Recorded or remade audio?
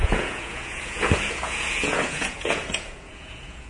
remade